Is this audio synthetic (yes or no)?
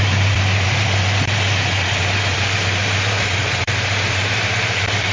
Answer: yes